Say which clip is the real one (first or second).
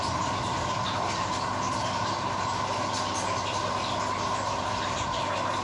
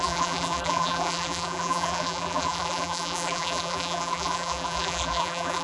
first